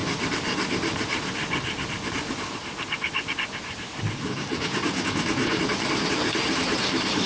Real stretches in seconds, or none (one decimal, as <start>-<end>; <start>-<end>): 0.0-4.3; 5.6-7.3

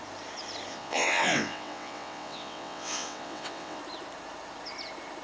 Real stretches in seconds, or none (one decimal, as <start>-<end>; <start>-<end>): 0.0-0.7; 3.8-5.2

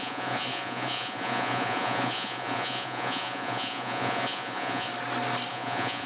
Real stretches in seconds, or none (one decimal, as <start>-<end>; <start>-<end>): 4.9-5.5

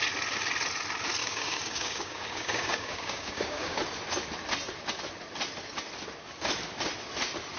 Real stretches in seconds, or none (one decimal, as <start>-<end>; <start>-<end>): 0.0-1.2; 3.8-7.6

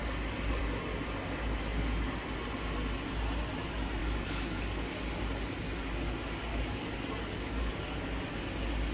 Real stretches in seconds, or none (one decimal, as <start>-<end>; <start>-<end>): 0.0-4.0; 5.2-6.5; 7.7-8.9

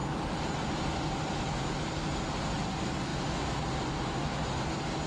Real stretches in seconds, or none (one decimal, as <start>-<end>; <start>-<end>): 0.0-5.1